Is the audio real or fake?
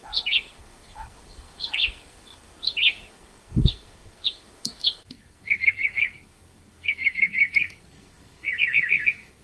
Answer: fake